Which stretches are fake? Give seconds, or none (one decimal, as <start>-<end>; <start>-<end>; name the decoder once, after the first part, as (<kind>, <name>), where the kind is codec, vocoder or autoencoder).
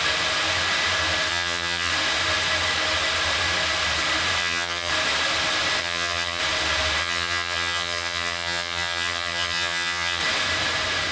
1.3-1.9 (vocoder, HiFi-GAN); 4.4-4.9; 5.8-6.4; 7.0-10.2